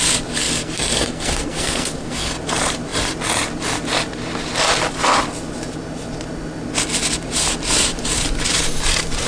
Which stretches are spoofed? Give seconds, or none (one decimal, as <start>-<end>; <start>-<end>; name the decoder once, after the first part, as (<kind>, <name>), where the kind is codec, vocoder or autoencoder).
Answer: 0.4-2.3 (codec, SNAC)